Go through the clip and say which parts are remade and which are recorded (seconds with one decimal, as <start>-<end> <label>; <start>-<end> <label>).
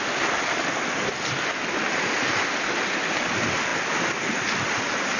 0.0-5.2 recorded